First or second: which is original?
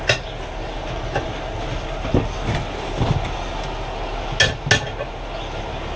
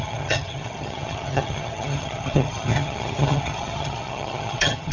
first